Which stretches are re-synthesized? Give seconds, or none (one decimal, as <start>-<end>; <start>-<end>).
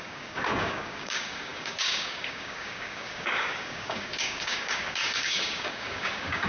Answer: 0.0-6.5